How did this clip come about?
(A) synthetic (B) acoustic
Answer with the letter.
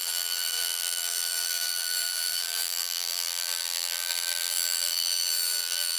A